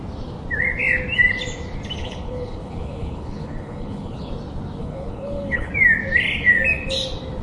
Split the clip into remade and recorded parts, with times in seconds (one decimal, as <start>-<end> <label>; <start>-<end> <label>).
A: 0.0-2.0 recorded; 2.0-4.3 remade; 4.3-4.8 recorded; 4.8-5.7 remade; 5.7-7.4 recorded